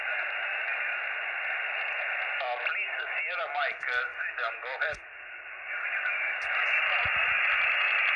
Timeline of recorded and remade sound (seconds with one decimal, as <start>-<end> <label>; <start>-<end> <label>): 0.0-8.2 recorded